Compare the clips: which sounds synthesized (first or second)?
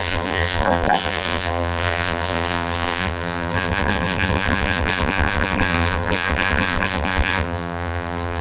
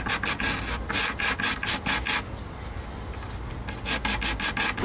first